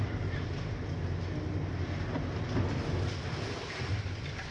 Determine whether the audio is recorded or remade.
recorded